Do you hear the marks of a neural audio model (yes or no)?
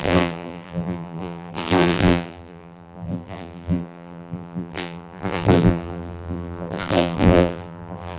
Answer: yes